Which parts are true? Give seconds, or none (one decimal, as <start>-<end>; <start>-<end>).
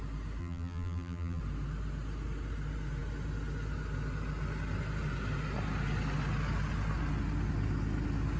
0.0-0.4; 1.4-8.4